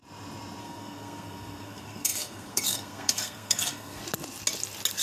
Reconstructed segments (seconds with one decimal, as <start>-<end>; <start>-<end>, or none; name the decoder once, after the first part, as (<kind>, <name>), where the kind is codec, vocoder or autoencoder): 0.6-4.0 (codec, SNAC)